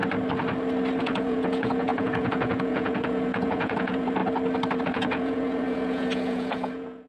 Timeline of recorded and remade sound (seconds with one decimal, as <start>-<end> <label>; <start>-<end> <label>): 0.0-1.0 recorded; 1.0-4.2 remade; 4.2-4.8 recorded; 4.8-7.1 remade